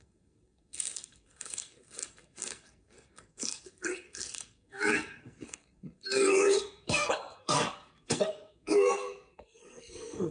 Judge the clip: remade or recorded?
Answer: remade